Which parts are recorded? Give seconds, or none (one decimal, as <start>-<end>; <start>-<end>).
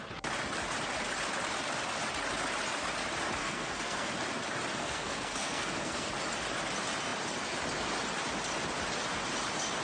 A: 0.0-3.4; 4.1-4.8; 6.1-9.8